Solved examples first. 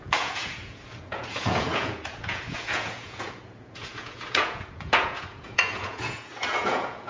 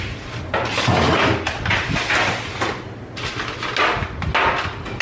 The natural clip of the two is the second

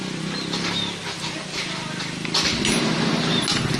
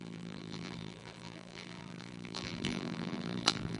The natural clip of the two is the first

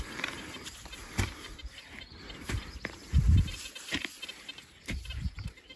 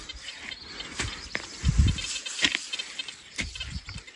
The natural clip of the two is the second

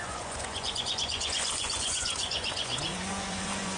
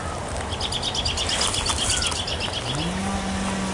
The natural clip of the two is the second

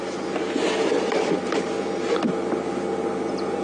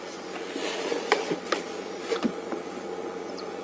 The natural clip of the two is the first